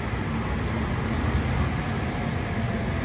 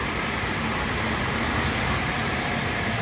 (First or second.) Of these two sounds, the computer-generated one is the second